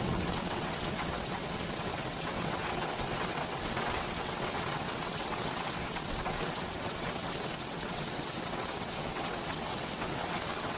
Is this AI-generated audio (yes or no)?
yes